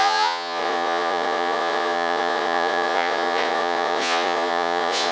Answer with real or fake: fake